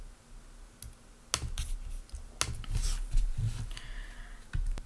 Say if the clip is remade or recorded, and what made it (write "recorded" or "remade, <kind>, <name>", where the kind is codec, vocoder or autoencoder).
recorded